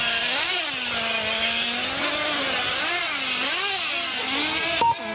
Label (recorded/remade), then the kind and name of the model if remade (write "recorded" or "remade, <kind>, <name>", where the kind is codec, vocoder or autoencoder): recorded